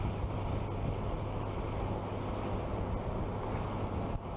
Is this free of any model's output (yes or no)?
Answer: yes